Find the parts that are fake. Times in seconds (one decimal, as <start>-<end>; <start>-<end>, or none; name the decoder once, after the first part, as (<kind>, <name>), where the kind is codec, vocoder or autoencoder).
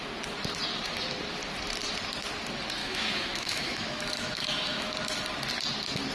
2.8-4.9 (autoencoder, DAC-VAE)